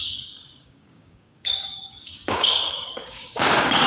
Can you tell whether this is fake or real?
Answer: fake